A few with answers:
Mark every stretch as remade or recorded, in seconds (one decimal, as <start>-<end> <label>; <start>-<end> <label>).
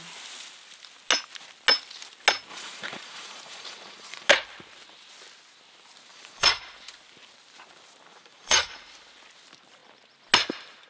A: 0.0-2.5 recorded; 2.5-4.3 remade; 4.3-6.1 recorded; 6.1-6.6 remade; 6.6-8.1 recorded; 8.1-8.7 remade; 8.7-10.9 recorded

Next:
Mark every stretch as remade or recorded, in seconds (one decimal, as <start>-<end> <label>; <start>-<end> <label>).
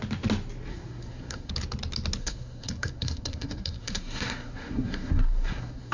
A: 0.0-0.7 recorded; 0.7-1.5 remade; 1.5-2.2 recorded; 2.2-5.9 remade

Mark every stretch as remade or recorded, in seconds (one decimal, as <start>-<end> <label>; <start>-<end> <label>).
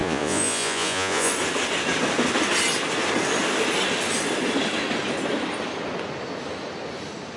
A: 0.0-1.3 remade; 1.3-7.4 recorded